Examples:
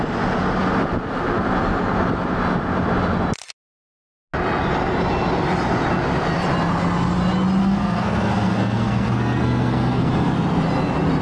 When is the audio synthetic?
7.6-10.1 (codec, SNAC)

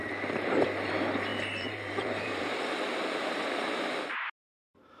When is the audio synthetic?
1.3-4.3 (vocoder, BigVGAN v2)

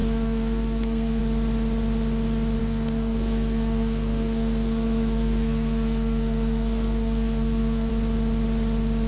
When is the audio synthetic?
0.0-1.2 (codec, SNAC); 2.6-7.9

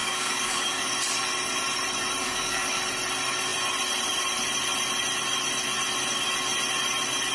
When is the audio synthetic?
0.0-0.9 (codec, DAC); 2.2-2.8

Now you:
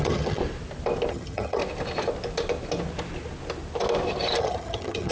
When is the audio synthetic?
0.0-0.4 (vocoder, HiFi-GAN); 1.1-1.6; 4.4-5.1